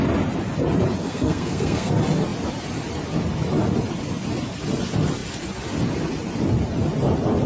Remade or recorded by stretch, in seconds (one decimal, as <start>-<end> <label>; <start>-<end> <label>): 0.0-1.0 recorded; 1.0-1.9 remade; 1.9-7.5 recorded